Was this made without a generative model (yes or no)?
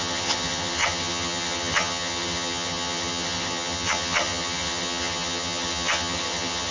no